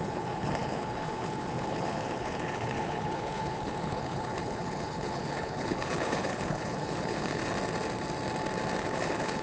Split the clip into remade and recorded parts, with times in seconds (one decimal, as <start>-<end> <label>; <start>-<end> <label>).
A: 0.0-7.4 remade; 7.4-8.8 recorded; 8.8-9.4 remade